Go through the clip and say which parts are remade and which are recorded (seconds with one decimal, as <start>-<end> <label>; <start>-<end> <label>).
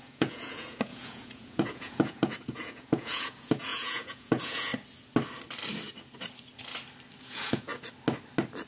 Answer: 0.0-4.7 remade; 4.7-7.2 recorded; 7.2-7.7 remade; 7.7-8.7 recorded